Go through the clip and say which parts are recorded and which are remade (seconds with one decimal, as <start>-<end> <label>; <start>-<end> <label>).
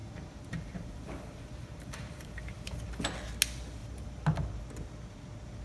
0.0-3.0 remade; 3.0-3.8 recorded; 3.8-4.6 remade; 4.6-5.6 recorded